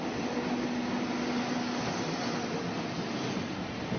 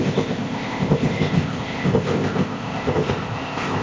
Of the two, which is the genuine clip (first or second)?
first